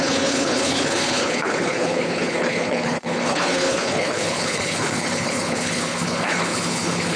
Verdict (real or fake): fake